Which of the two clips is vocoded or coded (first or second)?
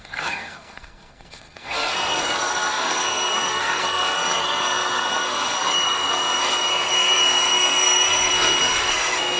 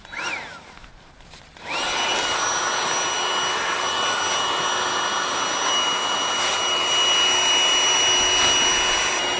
first